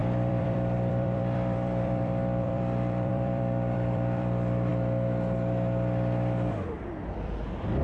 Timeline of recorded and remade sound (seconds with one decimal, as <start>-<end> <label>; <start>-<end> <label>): 0.0-4.7 remade; 4.7-6.8 recorded; 6.8-7.8 remade